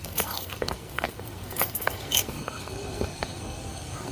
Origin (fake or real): fake